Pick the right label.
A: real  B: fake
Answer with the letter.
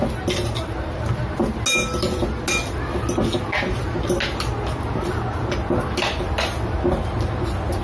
A